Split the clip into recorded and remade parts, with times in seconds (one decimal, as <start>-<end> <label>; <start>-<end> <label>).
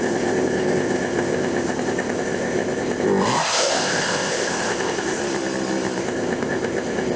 0.0-5.2 remade; 5.2-6.0 recorded; 6.0-7.2 remade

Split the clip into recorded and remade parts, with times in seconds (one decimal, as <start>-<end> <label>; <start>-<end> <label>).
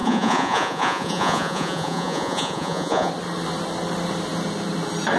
0.0-3.1 remade; 3.1-5.2 recorded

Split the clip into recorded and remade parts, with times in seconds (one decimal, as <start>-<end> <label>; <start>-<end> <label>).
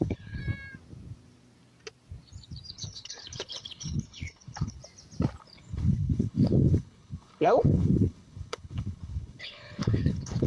0.0-0.4 remade; 0.4-2.7 recorded; 2.7-4.8 remade; 4.8-5.4 recorded; 5.4-10.5 remade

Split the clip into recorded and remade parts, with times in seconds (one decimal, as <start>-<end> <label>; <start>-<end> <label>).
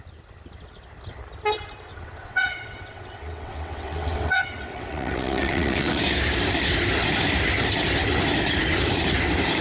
0.0-1.9 recorded; 1.9-6.0 remade; 6.0-9.6 recorded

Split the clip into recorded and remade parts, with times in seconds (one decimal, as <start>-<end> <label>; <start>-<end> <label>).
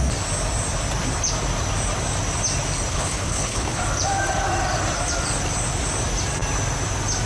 0.0-2.9 recorded; 2.9-3.8 remade; 3.8-7.3 recorded